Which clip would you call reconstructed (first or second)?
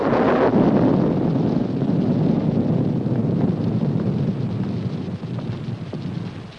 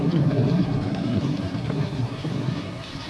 second